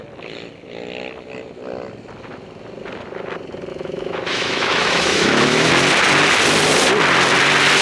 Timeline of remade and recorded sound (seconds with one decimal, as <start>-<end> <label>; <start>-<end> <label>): 0.0-3.7 recorded; 3.7-5.7 remade; 5.7-7.8 recorded